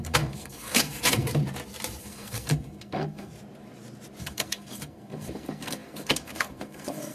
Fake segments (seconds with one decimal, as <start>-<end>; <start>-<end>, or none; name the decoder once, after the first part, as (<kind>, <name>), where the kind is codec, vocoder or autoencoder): 0.0-1.4 (codec, SNAC); 2.0-3.3; 4.2-7.1